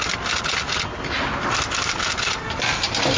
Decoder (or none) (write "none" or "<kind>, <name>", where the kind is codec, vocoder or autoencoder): none